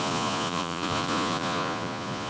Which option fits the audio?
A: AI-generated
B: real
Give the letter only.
A